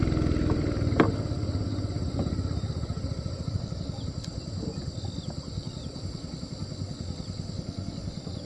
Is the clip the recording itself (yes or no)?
yes